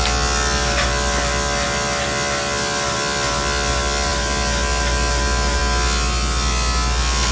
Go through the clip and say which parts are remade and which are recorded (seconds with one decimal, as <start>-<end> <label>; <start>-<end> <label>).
0.0-7.3 recorded